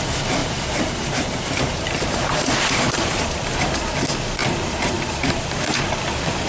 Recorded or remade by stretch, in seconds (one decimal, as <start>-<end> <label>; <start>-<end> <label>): 0.0-0.4 recorded; 0.4-3.8 remade; 3.8-4.4 recorded; 4.4-5.8 remade; 5.8-6.5 recorded